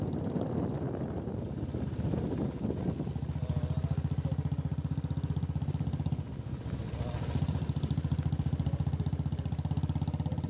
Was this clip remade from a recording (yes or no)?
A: no